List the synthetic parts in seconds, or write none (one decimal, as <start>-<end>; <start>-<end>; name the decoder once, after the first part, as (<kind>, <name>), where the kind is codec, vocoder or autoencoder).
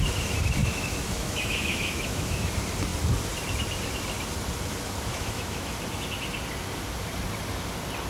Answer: 0.6-2.5 (autoencoder, DAC-VAE); 5.1-5.7